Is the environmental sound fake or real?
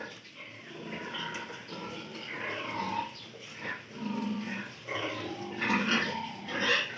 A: real